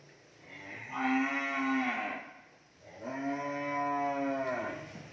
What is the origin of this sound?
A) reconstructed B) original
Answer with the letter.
B